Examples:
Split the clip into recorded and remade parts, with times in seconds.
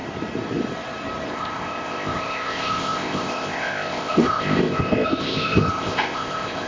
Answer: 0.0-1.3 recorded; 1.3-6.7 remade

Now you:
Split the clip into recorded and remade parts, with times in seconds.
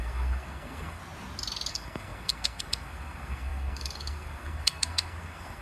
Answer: 0.0-1.0 remade; 1.0-1.7 recorded; 1.7-5.6 remade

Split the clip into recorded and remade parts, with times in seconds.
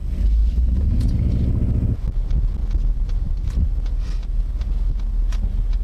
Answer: 0.0-0.4 recorded; 0.4-0.9 remade; 0.9-5.8 recorded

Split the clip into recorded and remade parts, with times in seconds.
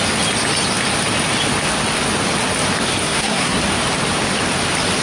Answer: 0.0-3.0 recorded; 3.0-3.6 remade; 3.6-5.0 recorded